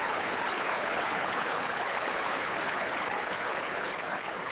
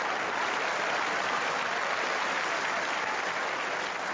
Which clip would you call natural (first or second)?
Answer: second